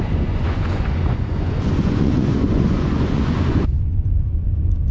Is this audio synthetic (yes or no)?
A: yes